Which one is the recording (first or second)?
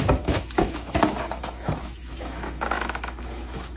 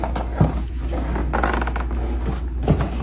second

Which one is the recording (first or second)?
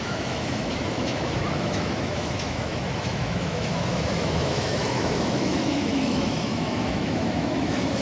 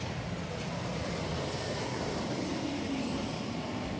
second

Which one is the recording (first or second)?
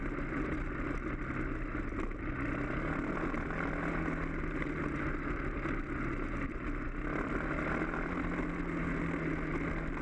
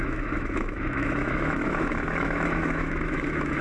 first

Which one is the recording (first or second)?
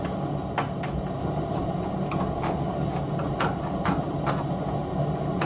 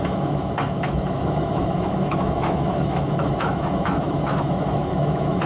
first